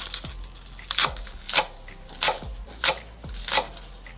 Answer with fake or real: real